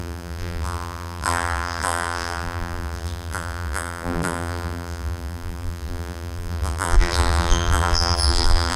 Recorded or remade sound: remade